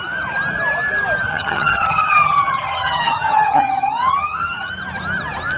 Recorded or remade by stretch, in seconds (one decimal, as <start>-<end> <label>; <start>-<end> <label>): 0.0-1.3 recorded; 1.3-4.7 remade; 4.7-5.6 recorded